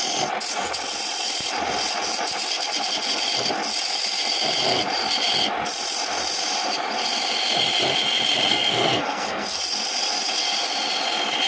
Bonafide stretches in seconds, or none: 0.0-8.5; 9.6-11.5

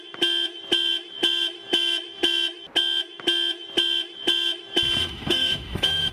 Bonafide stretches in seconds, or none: 0.0-5.0

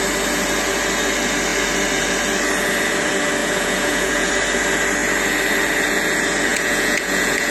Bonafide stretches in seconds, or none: 0.0-3.4; 4.3-6.5

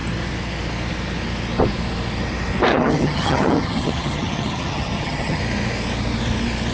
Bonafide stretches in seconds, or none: 0.0-2.7; 5.4-6.7

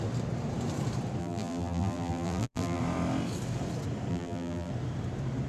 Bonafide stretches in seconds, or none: 0.0-1.2; 2.8-4.1; 4.7-5.5

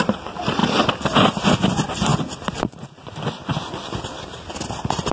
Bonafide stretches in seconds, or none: 0.0-5.1

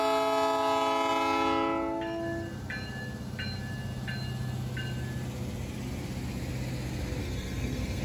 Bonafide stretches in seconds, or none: 0.0-7.2

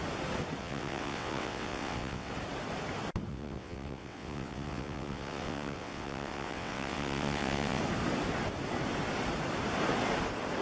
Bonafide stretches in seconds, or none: 0.0-0.6; 2.3-3.3; 7.8-10.6